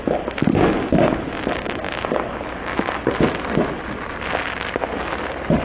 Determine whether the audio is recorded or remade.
recorded